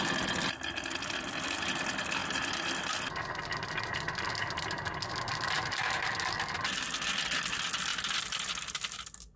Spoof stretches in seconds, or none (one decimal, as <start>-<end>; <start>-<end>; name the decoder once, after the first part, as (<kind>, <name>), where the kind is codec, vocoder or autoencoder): none